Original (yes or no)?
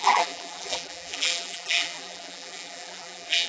no